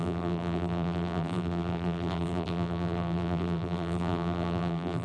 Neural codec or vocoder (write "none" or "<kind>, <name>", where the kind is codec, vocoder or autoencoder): vocoder, BigVGAN v2